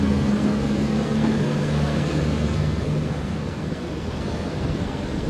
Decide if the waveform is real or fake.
fake